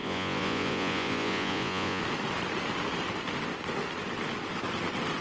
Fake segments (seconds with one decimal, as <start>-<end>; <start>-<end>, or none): 0.0-2.0